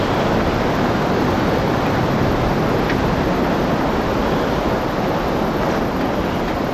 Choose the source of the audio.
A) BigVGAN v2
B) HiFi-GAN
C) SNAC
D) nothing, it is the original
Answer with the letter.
D